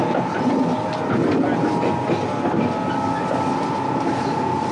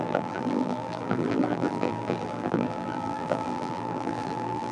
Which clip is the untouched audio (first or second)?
first